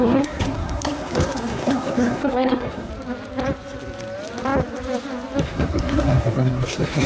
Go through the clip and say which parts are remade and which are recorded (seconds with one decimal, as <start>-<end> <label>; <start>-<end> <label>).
0.0-2.9 remade; 2.9-5.4 recorded; 5.4-7.1 remade